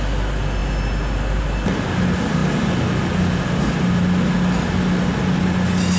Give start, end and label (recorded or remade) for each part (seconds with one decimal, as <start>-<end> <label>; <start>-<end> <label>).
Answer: 0.0-6.0 recorded

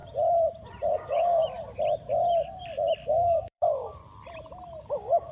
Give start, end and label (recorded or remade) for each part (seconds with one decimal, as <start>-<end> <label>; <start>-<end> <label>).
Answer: 0.0-0.9 recorded; 0.9-1.4 remade; 1.4-3.1 recorded; 3.1-4.0 remade; 4.0-4.8 recorded; 4.8-5.3 remade

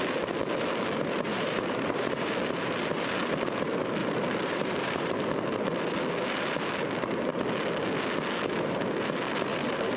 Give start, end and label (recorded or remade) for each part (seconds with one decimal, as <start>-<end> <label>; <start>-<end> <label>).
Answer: 0.0-1.3 recorded; 1.3-2.3 remade; 2.3-4.0 recorded; 4.0-5.1 remade; 5.1-9.5 recorded; 9.5-10.0 remade

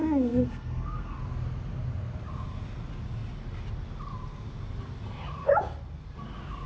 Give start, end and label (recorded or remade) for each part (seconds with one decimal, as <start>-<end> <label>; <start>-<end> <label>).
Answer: 0.0-1.2 remade; 1.2-6.7 recorded

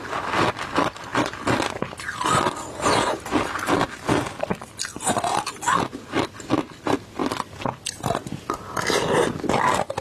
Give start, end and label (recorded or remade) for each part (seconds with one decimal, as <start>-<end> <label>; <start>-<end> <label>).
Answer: 0.0-1.1 recorded; 1.1-3.5 remade; 3.5-4.5 recorded; 4.5-5.8 remade; 5.8-10.0 recorded